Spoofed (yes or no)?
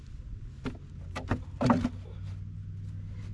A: no